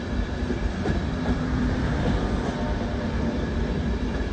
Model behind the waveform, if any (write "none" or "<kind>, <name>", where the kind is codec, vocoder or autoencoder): vocoder, BigVGAN v2